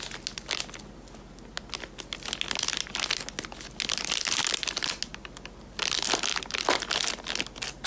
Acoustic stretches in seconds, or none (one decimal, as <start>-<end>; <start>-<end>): 0.0-7.9